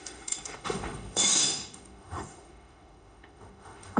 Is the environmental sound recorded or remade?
remade